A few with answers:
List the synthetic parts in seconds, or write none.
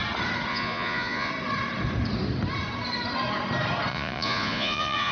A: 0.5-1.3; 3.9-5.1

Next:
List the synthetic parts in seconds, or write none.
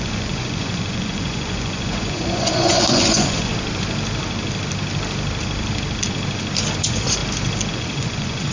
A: 0.0-3.5; 6.8-7.2; 7.7-8.5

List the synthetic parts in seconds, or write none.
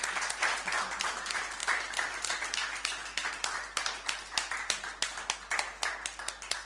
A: none